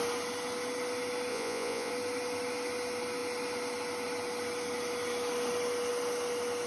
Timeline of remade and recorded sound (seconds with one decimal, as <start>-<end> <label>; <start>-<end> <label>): 0.0-1.3 recorded; 1.3-1.9 remade; 1.9-6.7 recorded